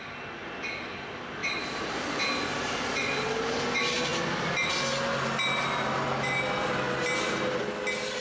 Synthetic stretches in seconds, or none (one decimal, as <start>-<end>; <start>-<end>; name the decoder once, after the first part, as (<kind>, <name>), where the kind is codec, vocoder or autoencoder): 1.4-2.2 (vocoder, BigVGAN v2)